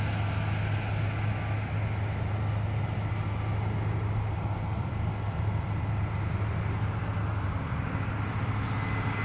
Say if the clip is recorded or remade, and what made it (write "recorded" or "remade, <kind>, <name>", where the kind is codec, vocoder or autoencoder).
recorded